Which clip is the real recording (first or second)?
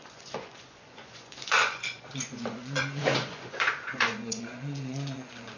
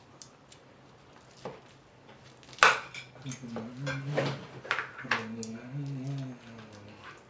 second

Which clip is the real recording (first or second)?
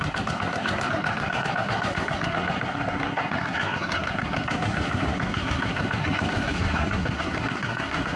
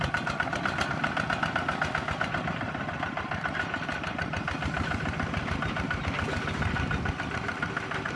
second